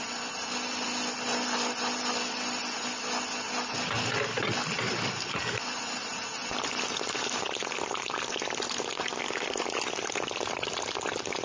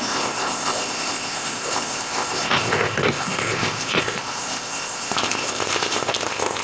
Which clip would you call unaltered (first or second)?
first